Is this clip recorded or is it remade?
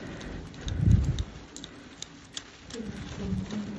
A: recorded